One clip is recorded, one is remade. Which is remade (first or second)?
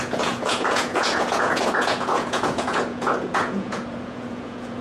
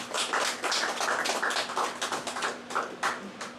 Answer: first